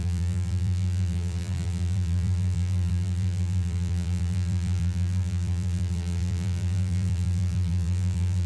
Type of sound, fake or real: fake